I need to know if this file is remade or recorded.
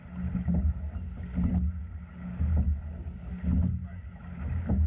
recorded